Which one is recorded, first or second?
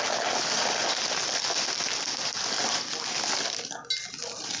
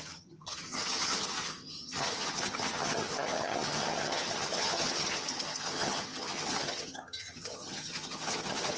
first